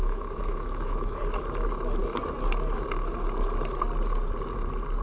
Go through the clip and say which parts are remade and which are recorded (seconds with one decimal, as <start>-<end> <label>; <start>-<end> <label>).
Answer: 0.0-1.2 remade; 1.2-5.0 recorded